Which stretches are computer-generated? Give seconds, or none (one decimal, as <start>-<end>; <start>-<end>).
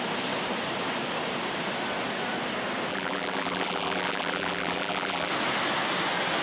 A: 2.9-5.3